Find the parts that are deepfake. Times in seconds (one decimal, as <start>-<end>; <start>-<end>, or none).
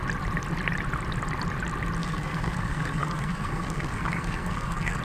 2.0-5.0